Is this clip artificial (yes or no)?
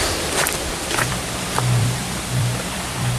yes